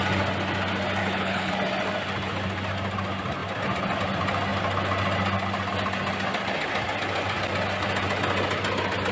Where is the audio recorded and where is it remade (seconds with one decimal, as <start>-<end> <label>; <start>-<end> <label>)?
0.0-1.0 recorded; 1.0-1.5 remade; 1.5-9.1 recorded